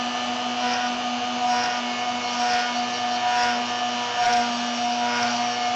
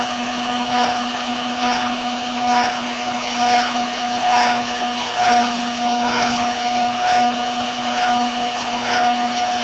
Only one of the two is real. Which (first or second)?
first